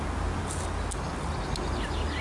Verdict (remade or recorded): recorded